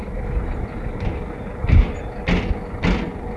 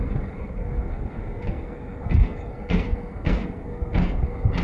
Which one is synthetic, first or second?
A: second